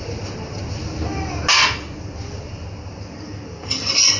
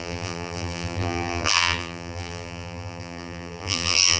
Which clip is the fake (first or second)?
second